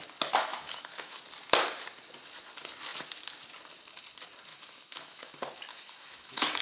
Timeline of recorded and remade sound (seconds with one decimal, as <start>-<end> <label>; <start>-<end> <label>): 0.0-0.5 recorded; 0.5-1.2 remade; 1.2-4.5 recorded; 4.5-5.3 remade; 5.3-5.7 recorded; 5.7-6.6 remade